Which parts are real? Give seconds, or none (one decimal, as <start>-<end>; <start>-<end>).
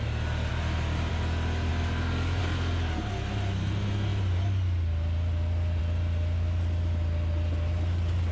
0.0-8.3